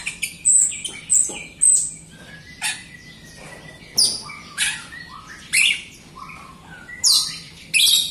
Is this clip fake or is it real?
real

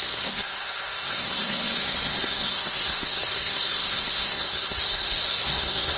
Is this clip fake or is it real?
fake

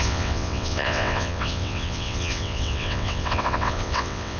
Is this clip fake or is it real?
fake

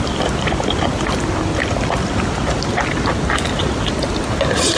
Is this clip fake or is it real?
real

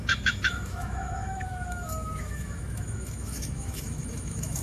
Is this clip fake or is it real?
fake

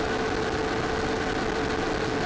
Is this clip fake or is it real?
real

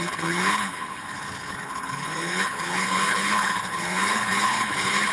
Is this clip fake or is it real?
fake